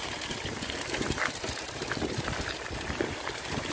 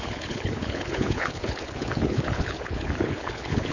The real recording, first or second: first